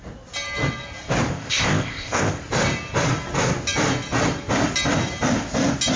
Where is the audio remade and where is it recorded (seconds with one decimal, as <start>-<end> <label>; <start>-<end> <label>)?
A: 0.0-1.3 recorded; 1.3-2.4 remade; 2.4-6.0 recorded